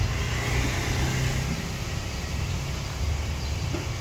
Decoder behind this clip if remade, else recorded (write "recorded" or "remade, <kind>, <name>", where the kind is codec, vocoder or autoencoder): recorded